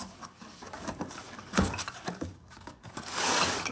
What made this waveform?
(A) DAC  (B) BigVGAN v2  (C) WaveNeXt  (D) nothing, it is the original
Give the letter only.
A